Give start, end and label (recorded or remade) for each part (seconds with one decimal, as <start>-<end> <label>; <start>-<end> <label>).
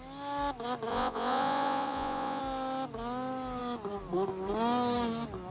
0.0-0.9 recorded; 0.9-2.4 remade; 2.4-5.5 recorded